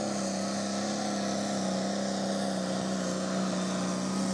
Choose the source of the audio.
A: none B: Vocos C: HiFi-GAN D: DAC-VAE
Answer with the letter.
A